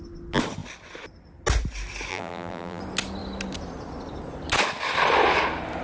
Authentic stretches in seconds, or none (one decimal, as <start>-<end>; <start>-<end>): 0.0-2.1; 2.8-5.8